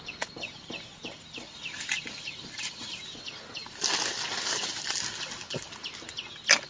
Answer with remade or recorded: recorded